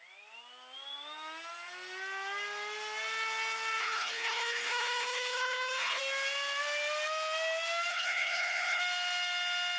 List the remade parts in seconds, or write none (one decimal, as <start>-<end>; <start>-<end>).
3.8-6.0; 7.9-8.8